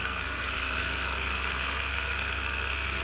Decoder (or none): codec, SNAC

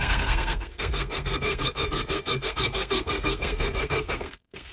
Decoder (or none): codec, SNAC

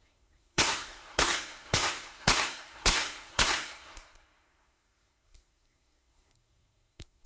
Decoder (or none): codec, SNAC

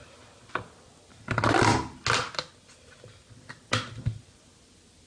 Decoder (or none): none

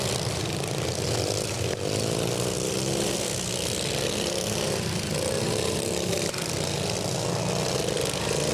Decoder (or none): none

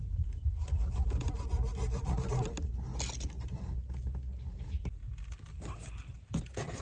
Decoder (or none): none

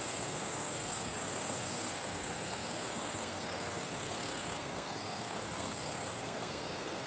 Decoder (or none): codec, SNAC